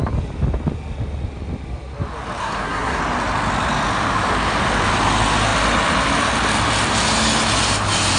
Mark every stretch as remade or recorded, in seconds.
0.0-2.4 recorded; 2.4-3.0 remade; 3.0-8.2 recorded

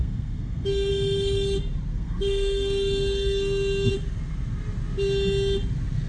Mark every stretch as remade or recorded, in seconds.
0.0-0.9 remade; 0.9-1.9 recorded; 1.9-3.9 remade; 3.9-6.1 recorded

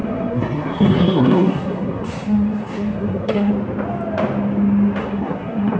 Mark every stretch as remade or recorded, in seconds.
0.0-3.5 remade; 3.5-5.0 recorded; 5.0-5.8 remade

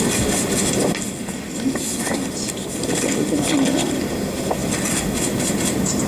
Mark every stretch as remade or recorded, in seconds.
0.0-6.1 recorded

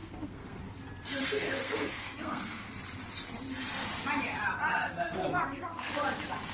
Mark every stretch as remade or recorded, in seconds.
0.0-0.6 remade; 0.6-1.2 recorded; 1.2-2.7 remade; 2.7-4.7 recorded; 4.7-5.9 remade; 5.9-6.5 recorded

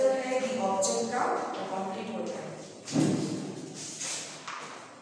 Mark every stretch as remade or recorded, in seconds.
0.0-5.0 recorded